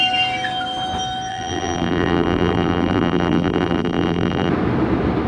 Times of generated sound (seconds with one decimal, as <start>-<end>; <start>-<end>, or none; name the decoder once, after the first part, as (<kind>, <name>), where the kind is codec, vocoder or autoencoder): 1.3-4.5 (vocoder, BigVGAN v2)